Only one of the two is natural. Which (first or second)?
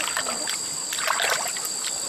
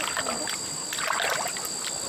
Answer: second